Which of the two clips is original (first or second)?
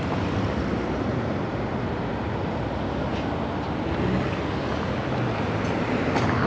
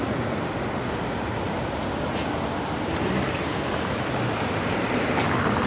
first